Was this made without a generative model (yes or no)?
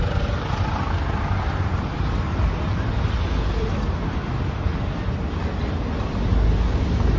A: yes